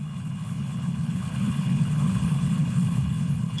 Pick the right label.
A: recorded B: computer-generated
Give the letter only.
B